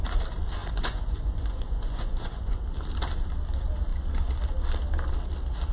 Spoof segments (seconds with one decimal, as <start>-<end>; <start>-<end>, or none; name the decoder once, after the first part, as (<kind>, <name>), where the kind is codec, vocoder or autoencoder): 0.6-2.6 (vocoder, Vocos)